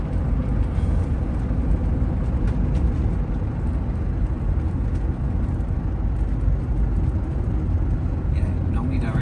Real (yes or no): yes